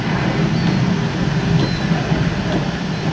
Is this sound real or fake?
real